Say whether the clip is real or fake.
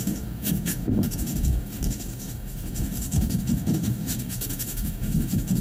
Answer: fake